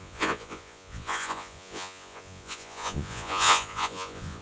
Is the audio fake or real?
fake